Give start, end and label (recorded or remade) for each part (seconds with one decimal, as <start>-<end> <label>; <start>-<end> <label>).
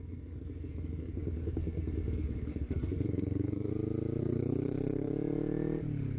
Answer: 0.0-3.7 remade; 3.7-4.2 recorded; 4.2-5.1 remade; 5.1-6.2 recorded